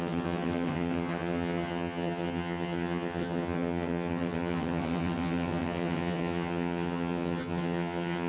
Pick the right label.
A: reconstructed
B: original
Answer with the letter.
A